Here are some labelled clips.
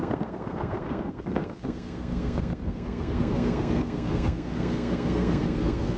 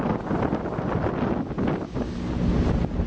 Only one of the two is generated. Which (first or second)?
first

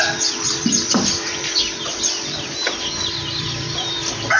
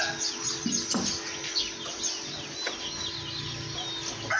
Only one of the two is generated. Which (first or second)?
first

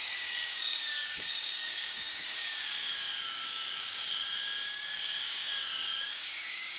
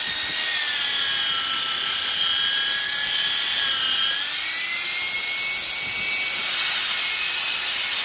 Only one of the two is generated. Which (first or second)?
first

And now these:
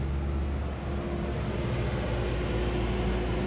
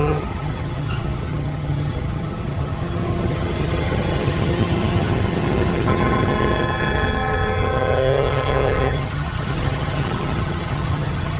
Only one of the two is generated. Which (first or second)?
second